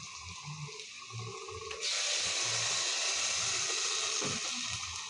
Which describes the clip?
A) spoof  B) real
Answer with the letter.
B